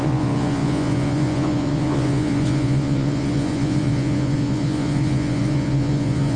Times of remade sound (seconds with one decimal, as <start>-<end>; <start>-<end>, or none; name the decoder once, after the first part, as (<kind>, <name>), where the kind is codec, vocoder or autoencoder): 0.0-6.4 (vocoder, Vocos)